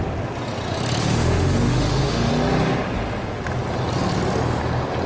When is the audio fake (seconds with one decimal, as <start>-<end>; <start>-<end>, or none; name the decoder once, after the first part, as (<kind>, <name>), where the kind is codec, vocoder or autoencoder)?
1.0-2.3 (autoencoder, DAC-VAE)